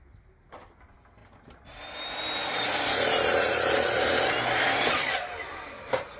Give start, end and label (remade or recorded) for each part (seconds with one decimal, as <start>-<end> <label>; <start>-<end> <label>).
0.0-6.2 recorded

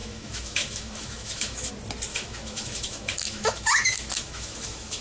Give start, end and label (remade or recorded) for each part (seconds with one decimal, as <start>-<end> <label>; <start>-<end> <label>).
0.0-1.7 remade; 1.7-2.1 recorded; 2.1-5.0 remade

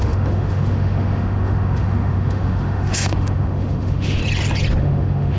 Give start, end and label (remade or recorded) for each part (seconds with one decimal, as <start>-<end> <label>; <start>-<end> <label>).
0.0-4.2 remade; 4.2-4.8 recorded; 4.8-5.4 remade

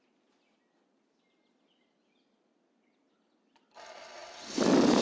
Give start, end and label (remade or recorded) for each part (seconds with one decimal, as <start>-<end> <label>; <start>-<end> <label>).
0.0-5.0 recorded

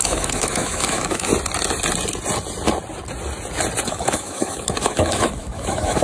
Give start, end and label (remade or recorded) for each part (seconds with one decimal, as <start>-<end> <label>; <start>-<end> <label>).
0.0-1.3 remade; 1.3-3.9 recorded; 3.9-6.0 remade

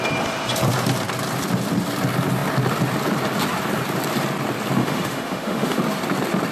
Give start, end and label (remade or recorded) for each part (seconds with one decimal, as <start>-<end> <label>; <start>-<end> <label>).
0.0-4.8 recorded; 4.8-5.8 remade; 5.8-6.5 recorded